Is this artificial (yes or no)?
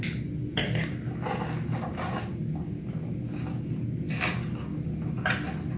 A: no